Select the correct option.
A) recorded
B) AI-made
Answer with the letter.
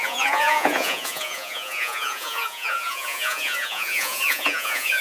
B